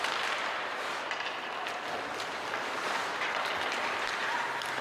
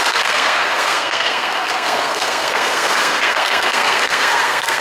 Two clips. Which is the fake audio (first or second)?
second